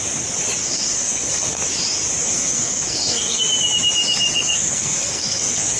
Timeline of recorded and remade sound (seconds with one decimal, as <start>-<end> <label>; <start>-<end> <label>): 0.0-0.6 recorded; 0.6-1.6 remade; 1.6-2.2 recorded; 2.2-3.4 remade; 3.4-4.3 recorded; 4.3-5.8 remade